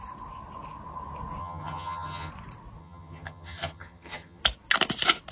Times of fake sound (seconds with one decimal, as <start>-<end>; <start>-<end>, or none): 1.4-2.3; 2.8-4.4